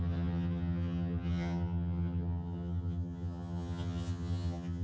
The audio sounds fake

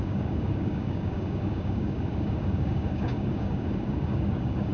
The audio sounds fake